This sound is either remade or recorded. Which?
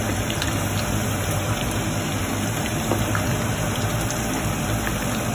remade